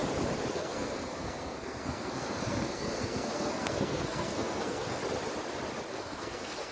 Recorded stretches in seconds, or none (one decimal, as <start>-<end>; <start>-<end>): 0.0-0.5; 5.0-5.9